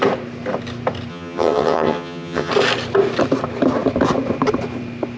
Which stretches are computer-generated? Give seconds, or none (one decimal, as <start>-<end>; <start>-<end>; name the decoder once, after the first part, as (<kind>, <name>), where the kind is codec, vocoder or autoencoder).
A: 1.1-2.5 (vocoder, HiFi-GAN)